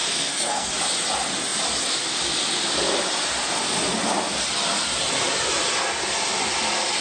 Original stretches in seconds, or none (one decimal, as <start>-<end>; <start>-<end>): 0.7-7.0